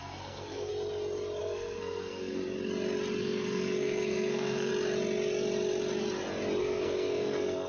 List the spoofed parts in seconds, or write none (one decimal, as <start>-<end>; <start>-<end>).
0.0-0.7; 1.4-2.4; 3.2-4.7; 6.6-7.7